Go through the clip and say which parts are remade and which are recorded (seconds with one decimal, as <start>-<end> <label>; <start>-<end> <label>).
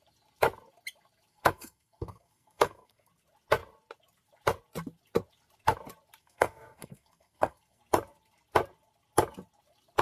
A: 0.0-1.3 recorded; 1.3-3.1 remade; 3.1-6.2 recorded; 6.2-7.8 remade; 7.8-10.0 recorded